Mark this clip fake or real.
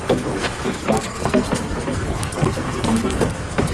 fake